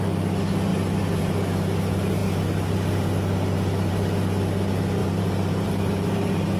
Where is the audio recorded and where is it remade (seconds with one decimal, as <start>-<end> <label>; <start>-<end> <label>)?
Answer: 0.0-5.0 recorded; 5.0-6.6 remade